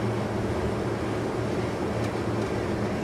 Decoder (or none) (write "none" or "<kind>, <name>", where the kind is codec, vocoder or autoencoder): none